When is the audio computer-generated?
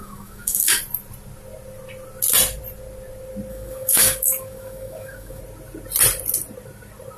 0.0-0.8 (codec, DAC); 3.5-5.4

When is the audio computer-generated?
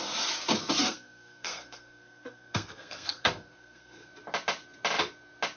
0.8-4.1 (codec, SNAC)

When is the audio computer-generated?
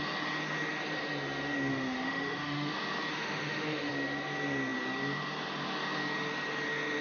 1.7-2.7 (autoencoder, DAC-VAE); 3.1-3.9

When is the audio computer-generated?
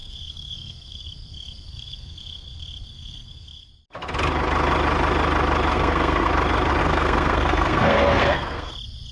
0.0-3.7 (codec, SNAC); 5.7-6.3; 6.8-8.7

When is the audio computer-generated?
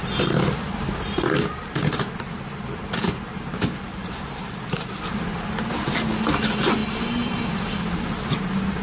3.9-5.2 (vocoder, BigVGAN v2); 6.8-7.5